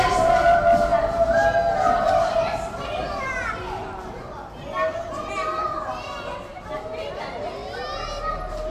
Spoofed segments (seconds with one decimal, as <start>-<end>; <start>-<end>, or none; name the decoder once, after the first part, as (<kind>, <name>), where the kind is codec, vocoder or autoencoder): none